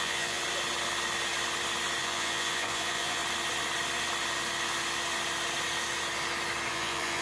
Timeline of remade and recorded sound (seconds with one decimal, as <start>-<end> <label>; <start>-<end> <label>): 0.0-0.4 remade; 0.4-2.0 recorded; 2.0-3.2 remade; 3.2-6.7 recorded; 6.7-7.2 remade